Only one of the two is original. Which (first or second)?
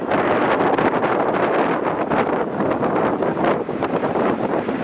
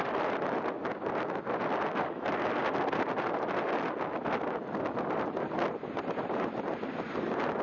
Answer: second